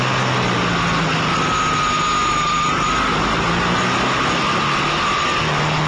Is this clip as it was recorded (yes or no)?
yes